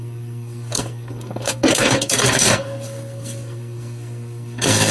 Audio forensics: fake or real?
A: fake